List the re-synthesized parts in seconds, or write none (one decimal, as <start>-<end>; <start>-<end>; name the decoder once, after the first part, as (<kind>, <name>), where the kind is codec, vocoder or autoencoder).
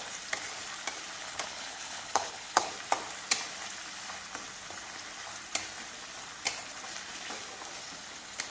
1.2-2.7 (codec, HILCodec)